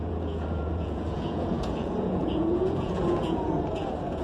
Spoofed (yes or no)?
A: yes